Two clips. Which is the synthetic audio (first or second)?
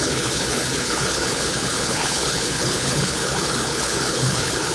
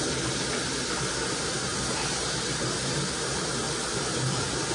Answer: first